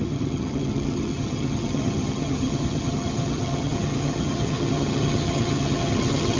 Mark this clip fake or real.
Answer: fake